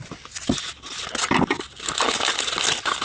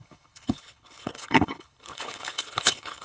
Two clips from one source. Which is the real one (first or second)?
first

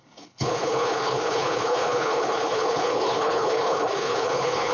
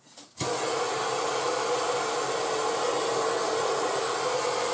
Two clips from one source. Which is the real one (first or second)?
second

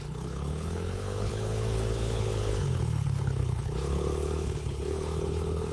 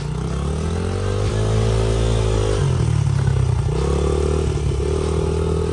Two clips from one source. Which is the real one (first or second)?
second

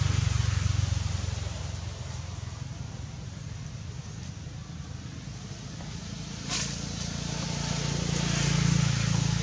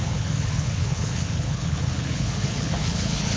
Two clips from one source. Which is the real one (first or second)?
first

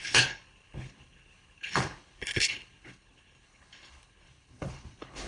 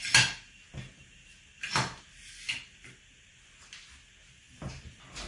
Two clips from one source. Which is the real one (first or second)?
second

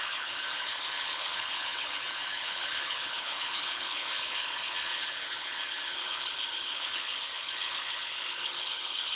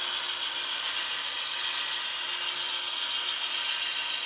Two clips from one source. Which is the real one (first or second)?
second